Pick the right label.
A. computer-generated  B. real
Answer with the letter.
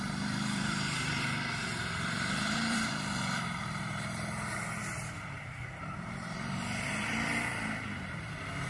A